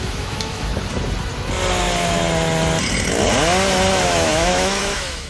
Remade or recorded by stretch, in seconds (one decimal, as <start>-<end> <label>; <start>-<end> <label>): 0.0-0.7 remade; 0.7-3.9 recorded; 3.9-5.3 remade